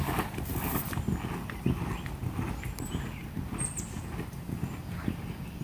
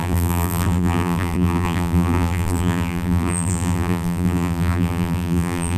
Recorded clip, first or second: first